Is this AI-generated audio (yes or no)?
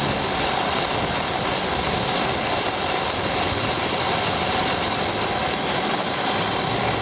no